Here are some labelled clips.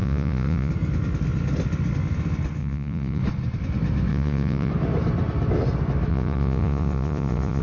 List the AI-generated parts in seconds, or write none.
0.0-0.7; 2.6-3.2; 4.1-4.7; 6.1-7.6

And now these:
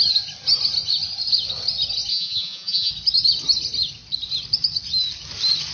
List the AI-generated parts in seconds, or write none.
2.1-2.9

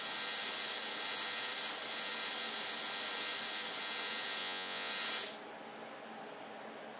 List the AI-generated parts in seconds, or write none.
4.4-4.9

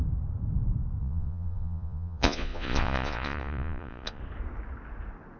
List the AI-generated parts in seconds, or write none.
1.0-4.2

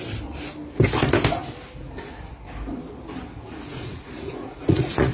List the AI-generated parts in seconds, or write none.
3.7-5.1

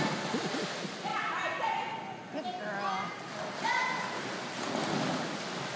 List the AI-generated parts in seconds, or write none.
none

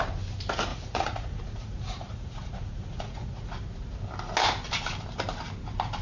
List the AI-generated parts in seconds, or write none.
0.7-3.5